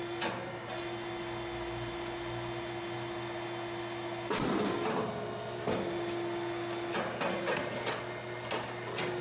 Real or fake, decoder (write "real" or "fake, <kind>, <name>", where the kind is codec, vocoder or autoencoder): real